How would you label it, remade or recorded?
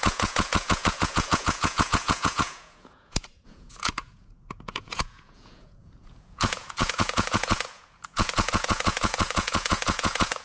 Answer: remade